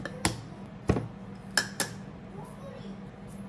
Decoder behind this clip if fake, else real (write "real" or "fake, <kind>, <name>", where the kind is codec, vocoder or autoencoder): real